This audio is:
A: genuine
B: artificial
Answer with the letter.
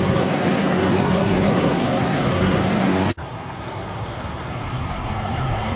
B